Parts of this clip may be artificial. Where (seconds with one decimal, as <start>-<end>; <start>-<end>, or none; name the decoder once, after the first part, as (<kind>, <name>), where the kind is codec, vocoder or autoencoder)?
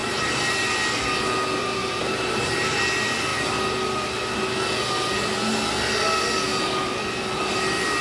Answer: 0.0-0.6 (vocoder, BigVGAN v2); 1.8-2.8